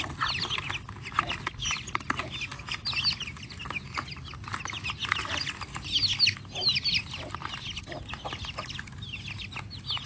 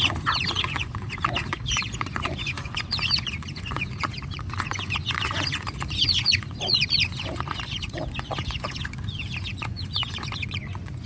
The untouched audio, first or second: first